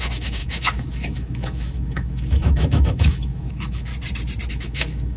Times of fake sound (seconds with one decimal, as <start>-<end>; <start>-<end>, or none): 0.0-3.9; 4.5-5.2